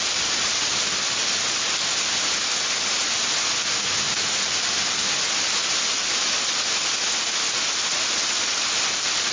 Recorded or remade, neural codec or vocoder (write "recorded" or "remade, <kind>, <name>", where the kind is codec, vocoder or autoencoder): recorded